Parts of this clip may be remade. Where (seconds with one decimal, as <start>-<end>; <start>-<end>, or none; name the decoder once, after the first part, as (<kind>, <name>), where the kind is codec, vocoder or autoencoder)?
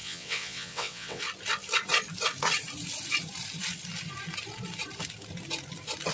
0.0-1.2 (vocoder, WaveNeXt)